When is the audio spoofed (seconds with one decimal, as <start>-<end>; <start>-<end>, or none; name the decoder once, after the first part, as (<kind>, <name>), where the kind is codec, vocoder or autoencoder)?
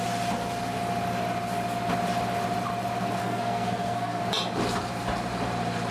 3.2-4.2 (codec, SNAC)